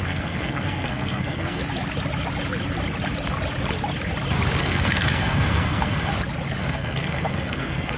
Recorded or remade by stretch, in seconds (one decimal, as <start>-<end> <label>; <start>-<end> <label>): 0.0-1.6 remade; 1.6-4.6 recorded; 4.6-6.1 remade; 6.1-6.6 recorded; 6.6-8.0 remade